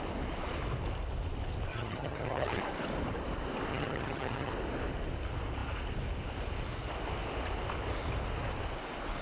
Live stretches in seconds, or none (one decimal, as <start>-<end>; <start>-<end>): 0.0-1.7; 2.6-3.7; 4.5-9.2